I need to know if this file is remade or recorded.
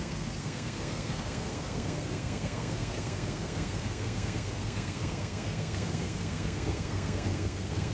remade